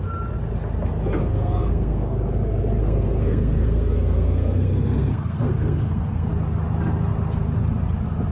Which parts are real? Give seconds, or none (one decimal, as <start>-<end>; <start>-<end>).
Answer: 0.0-1.2; 2.2-2.8; 6.3-8.3